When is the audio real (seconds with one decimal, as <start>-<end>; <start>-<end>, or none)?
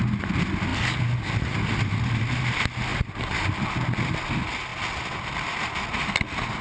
0.0-2.9; 3.6-4.7; 5.3-6.6